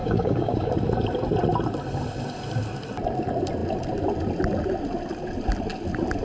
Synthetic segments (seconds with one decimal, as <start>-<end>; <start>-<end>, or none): 0.0-0.7